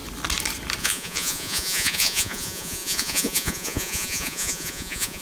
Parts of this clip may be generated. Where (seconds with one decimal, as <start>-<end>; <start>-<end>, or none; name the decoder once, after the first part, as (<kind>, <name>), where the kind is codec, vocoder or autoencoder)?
0.8-5.2 (vocoder, Vocos)